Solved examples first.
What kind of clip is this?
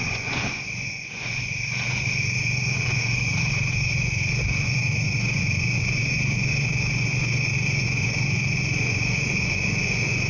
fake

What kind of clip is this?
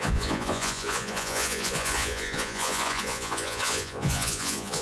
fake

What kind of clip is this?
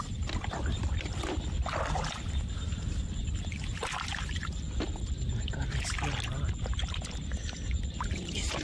real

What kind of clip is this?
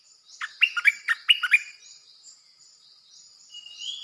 real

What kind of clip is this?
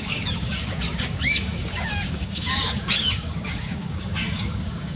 fake